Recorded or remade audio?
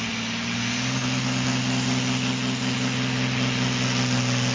recorded